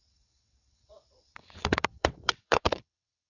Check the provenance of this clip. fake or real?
fake